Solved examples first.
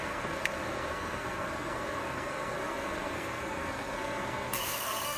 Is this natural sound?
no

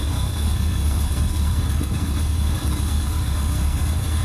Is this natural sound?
no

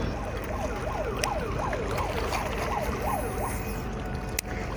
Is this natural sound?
yes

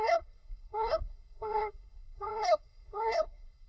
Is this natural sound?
no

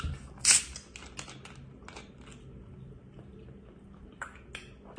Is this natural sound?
yes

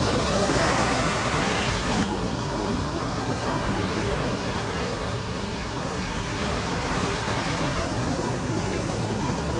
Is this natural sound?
no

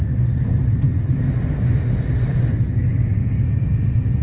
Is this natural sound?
yes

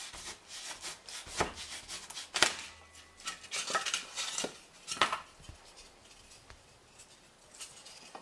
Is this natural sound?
yes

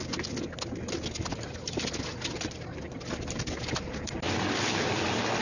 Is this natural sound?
yes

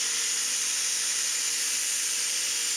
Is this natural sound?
yes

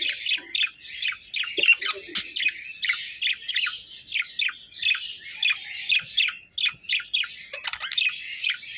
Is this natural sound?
yes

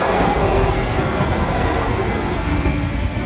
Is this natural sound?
no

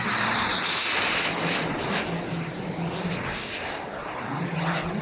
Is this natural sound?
yes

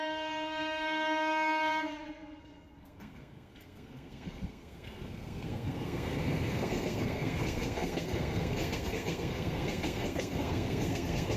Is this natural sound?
no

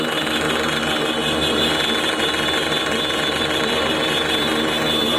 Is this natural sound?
yes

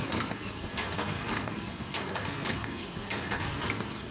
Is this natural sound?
no